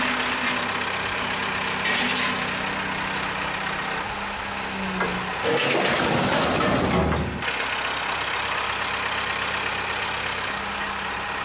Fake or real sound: real